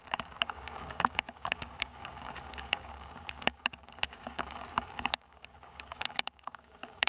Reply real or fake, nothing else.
fake